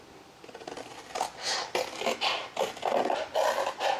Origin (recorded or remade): recorded